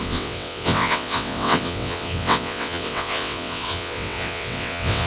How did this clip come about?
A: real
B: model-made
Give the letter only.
B